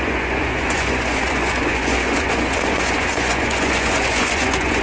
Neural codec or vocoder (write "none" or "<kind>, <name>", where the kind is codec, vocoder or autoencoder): vocoder, Vocos